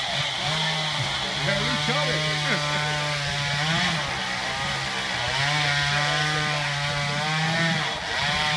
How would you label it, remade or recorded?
recorded